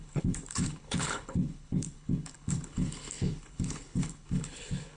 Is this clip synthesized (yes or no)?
yes